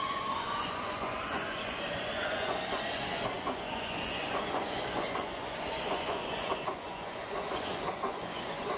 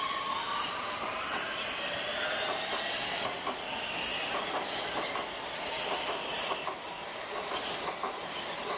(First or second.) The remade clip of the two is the first